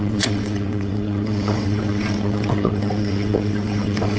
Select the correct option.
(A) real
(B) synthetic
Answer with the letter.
B